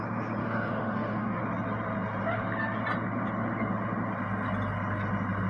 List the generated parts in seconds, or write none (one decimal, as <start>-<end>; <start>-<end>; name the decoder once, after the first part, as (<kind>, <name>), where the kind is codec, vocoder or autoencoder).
0.4-1.4 (autoencoder, DAC-VAE)